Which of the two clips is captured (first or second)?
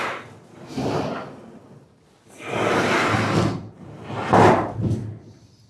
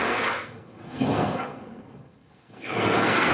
first